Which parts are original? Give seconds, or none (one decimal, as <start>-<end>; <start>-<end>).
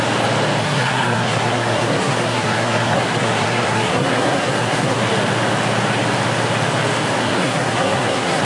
0.0-0.6; 5.0-7.2